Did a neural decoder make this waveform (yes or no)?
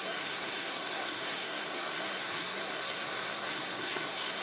yes